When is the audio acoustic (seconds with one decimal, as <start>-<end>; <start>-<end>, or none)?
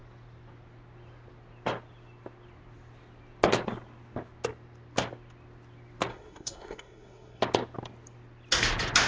0.0-6.1; 7.4-9.1